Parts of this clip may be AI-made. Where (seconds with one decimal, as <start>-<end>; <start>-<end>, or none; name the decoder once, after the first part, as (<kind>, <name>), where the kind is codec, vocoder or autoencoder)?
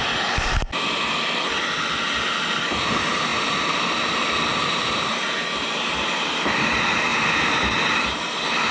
0.0-8.7 (vocoder, BigVGAN v2)